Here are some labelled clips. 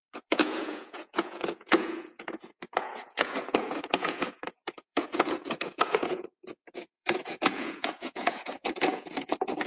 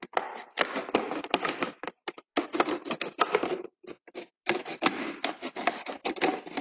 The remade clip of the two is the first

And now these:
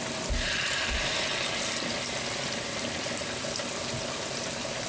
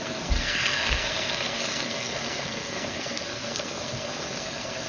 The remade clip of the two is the second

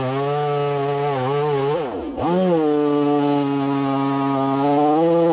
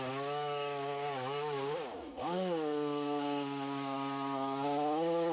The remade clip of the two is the second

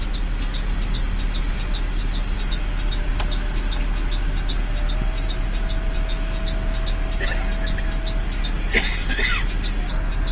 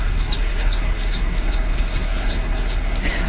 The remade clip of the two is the second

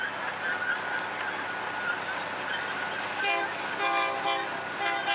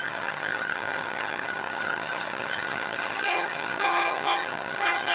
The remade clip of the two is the second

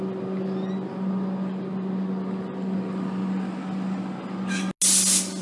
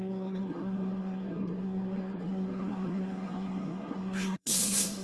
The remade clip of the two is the second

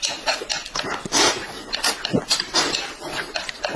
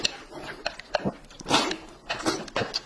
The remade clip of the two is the first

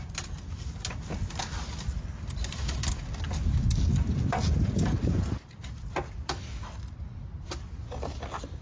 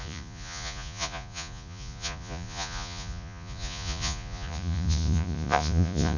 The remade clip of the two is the second